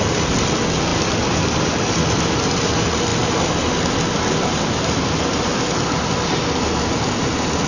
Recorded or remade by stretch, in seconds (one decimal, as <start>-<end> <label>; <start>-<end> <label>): 0.0-0.9 recorded; 0.9-2.6 remade; 2.6-7.7 recorded